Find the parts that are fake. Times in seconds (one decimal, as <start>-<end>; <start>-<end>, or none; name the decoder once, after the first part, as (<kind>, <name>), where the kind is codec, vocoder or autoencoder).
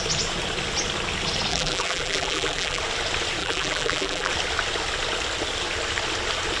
1.5-2.8 (vocoder, BigVGAN v2); 3.4-4.3